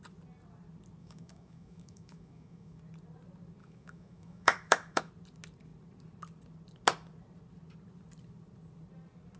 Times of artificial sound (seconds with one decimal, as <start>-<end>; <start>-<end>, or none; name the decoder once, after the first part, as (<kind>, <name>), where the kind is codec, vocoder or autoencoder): 1.0-2.8 (autoencoder, DAC-VAE); 3.6-5.1